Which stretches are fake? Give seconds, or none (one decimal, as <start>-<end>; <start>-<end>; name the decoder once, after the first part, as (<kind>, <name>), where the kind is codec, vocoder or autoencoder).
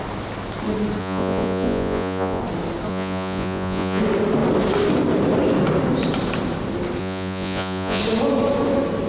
1.0-2.4 (vocoder, Vocos); 2.9-4.0; 7.0-8.0